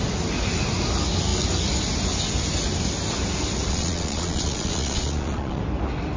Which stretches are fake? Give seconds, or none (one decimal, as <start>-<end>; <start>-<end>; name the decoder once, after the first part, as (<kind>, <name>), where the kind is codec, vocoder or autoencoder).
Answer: 3.7-5.6 (vocoder, Vocos)

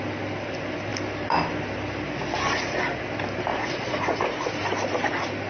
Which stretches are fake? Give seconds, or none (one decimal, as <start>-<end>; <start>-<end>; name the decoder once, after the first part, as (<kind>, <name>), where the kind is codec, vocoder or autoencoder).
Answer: 3.5-4.5 (vocoder, Vocos)

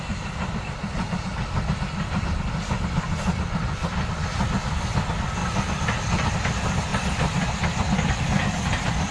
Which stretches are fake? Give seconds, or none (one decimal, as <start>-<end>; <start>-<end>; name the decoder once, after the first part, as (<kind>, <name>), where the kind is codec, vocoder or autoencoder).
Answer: none

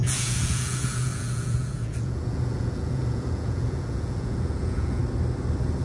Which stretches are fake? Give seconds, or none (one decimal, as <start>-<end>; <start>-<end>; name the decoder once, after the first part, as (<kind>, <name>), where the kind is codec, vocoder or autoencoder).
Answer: 0.0-5.0 (vocoder, Vocos)